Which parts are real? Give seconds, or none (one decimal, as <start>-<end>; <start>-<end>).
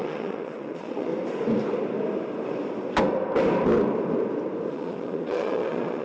1.1-4.7